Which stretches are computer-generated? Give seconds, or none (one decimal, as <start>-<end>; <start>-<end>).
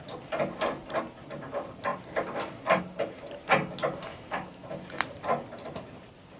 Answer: 4.1-4.7